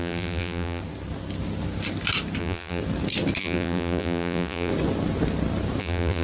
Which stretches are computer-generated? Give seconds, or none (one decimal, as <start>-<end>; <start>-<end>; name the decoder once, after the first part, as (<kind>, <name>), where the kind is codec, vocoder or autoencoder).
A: 0.0-0.8 (vocoder, BigVGAN v2); 2.4-2.8; 3.4-4.7; 5.8-6.2